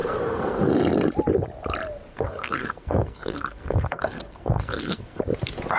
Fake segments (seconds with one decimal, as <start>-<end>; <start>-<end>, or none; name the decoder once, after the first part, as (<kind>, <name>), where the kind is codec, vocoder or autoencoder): 0.0-0.7 (codec, SNAC); 2.1-5.2